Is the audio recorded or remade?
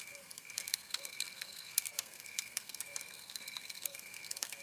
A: remade